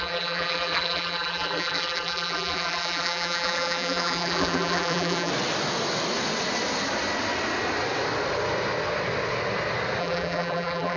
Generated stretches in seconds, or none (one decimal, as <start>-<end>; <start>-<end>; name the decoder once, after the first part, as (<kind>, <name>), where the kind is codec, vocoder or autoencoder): 0.0-5.3 (vocoder, BigVGAN v2); 10.0-11.0